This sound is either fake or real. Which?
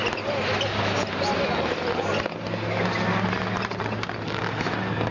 real